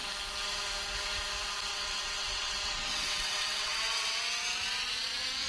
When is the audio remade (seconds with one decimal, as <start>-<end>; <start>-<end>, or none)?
1.7-4.2